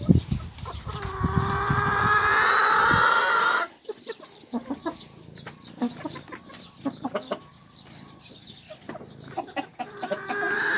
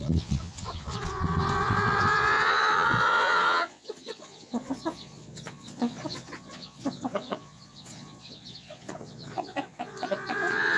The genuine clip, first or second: first